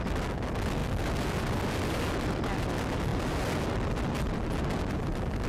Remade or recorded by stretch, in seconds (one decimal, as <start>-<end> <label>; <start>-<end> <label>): 0.0-5.5 recorded